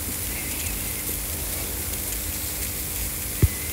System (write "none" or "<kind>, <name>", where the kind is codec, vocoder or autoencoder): none